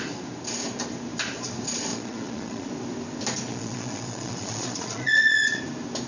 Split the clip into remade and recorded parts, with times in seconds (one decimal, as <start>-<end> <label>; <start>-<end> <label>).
0.0-1.9 recorded; 1.9-2.7 remade; 2.7-3.5 recorded; 3.5-5.6 remade; 5.6-6.1 recorded

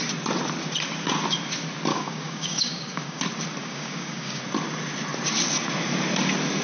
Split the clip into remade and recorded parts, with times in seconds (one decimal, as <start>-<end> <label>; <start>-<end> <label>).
0.0-1.9 recorded; 1.9-3.2 remade; 3.2-3.6 recorded; 3.6-4.4 remade; 4.4-6.6 recorded

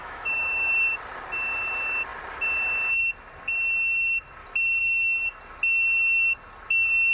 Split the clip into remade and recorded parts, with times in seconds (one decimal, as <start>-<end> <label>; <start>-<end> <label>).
0.0-0.7 remade; 0.7-4.8 recorded; 4.8-5.4 remade; 5.4-7.1 recorded

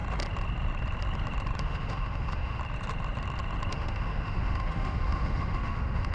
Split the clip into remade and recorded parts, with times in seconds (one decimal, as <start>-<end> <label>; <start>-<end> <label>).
0.0-1.6 recorded; 1.6-2.6 remade; 2.6-3.7 recorded; 3.7-6.1 remade

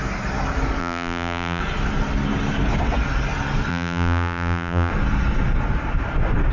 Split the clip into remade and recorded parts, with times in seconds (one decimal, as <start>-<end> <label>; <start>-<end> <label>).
0.0-0.8 recorded; 0.8-1.6 remade; 1.6-3.7 recorded; 3.7-4.9 remade; 4.9-6.5 recorded

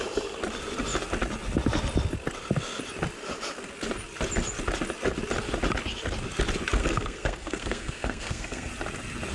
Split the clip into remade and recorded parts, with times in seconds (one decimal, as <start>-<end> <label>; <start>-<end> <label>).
0.0-6.8 recorded; 6.8-8.7 remade; 8.7-9.3 recorded